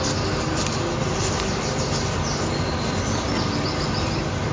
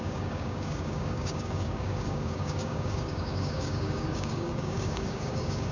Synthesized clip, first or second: second